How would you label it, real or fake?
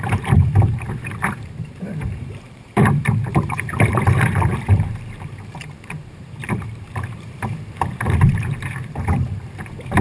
fake